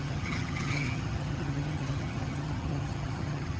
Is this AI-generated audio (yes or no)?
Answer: yes